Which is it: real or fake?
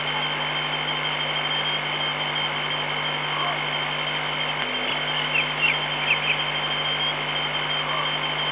real